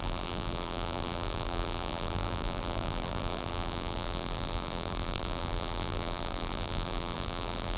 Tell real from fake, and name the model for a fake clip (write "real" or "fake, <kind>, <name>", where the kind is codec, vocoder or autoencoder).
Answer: fake, vocoder, BigVGAN v2